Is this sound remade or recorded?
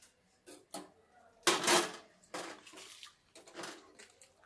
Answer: recorded